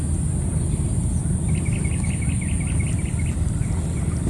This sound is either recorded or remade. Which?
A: recorded